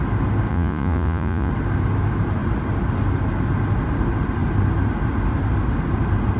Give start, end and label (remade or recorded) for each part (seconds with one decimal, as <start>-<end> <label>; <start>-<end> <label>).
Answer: 0.0-0.5 recorded; 0.5-1.5 remade; 1.5-6.4 recorded